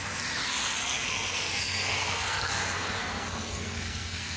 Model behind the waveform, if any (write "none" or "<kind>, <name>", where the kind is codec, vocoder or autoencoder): codec, SNAC